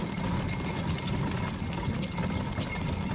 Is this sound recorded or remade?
recorded